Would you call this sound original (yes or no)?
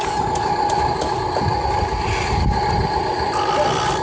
yes